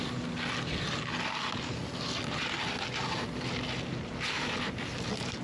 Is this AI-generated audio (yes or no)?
no